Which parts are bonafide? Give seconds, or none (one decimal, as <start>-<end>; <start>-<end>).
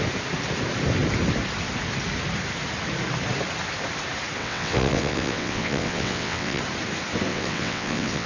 0.0-4.4; 6.6-7.3